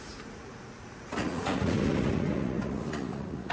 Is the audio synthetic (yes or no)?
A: yes